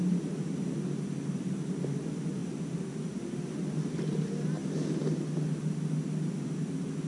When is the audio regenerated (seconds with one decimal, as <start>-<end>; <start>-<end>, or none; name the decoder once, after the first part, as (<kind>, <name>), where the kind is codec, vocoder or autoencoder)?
none